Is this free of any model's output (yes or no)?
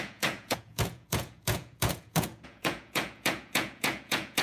no